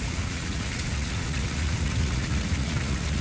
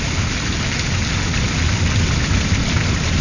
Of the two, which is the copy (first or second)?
first